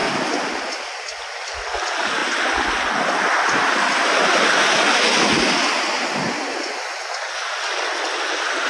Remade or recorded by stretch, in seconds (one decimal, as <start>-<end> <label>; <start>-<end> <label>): 0.0-8.7 recorded